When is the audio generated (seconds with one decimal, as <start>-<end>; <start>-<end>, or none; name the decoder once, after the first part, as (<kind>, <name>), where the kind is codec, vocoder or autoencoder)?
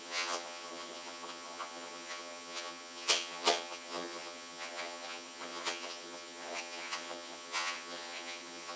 0.0-8.8 (vocoder, HiFi-GAN)